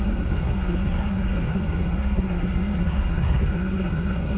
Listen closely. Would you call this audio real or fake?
fake